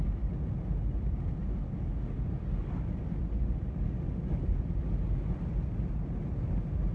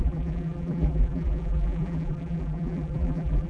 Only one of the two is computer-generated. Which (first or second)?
second